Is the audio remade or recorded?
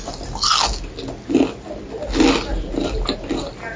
recorded